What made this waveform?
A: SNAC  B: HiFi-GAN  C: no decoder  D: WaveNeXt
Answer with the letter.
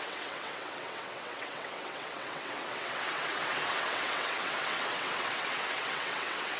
D